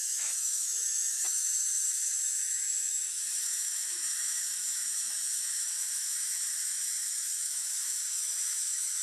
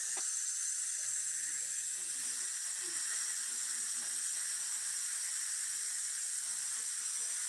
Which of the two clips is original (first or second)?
second